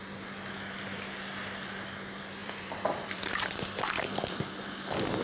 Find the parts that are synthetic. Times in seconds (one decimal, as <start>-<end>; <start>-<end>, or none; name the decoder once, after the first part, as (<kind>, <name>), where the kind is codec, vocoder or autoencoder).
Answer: 2.4-4.4 (vocoder, BigVGAN v2)